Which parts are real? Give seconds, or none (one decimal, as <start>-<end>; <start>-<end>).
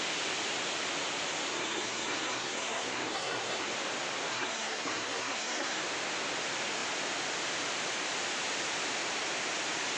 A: 0.0-1.5; 3.7-4.3; 5.8-10.0